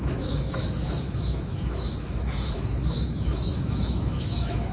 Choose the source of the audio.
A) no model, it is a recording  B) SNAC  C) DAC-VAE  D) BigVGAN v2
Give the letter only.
C